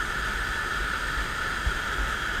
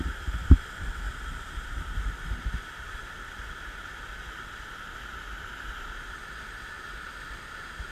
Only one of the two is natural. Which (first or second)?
first